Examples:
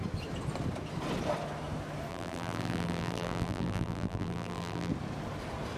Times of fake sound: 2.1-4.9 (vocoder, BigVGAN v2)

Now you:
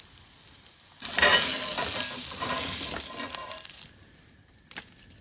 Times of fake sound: 3.4-4.7 (vocoder, BigVGAN v2)

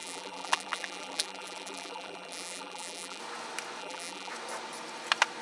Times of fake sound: 0.0-3.2 (vocoder, BigVGAN v2); 3.8-4.3

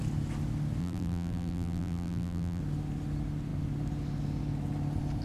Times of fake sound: 0.8-2.6 (vocoder, BigVGAN v2)

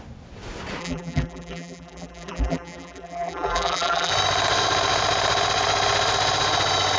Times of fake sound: 0.8-4.1 (vocoder, BigVGAN v2)